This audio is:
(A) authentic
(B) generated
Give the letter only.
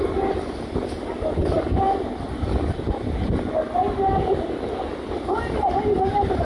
A